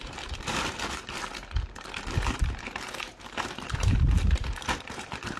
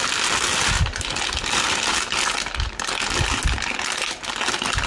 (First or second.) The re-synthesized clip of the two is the first